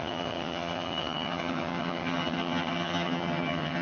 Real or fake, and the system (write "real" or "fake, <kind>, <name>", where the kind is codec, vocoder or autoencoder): fake, vocoder, HiFi-GAN